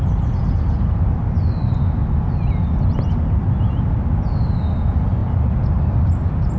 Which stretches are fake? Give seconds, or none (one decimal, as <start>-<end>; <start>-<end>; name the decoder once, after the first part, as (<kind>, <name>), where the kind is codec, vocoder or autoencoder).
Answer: none